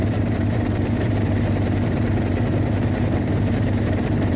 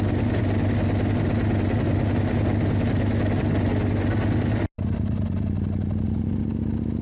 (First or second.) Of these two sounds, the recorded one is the second